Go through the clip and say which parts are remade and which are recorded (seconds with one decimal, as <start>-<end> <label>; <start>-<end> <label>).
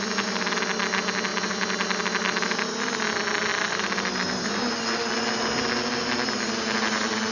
0.0-3.5 recorded; 3.5-4.4 remade; 4.4-7.3 recorded